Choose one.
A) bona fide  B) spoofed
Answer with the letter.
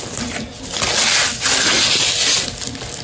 A